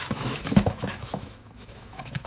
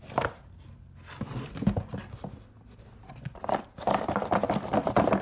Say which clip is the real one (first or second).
second